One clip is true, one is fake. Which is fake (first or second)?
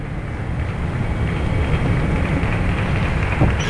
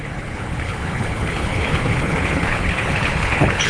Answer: second